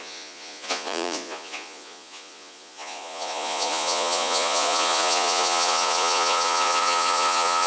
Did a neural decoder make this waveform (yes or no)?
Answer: yes